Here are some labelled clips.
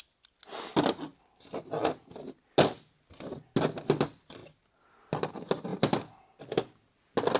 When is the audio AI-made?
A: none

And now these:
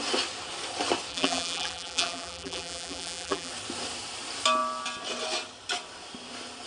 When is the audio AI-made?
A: 1.1-3.5 (vocoder, BigVGAN v2)

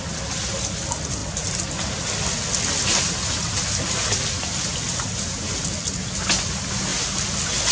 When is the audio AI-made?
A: none

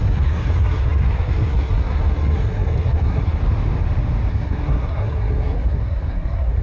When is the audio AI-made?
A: 0.0-3.4 (codec, SNAC); 4.3-6.6